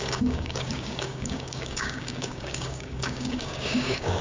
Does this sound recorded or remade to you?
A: remade